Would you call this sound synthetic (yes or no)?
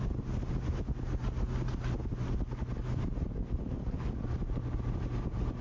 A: no